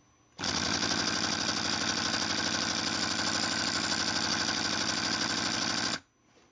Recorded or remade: recorded